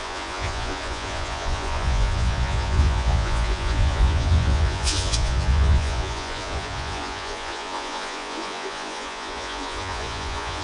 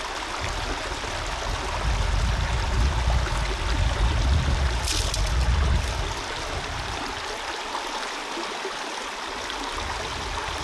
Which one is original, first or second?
second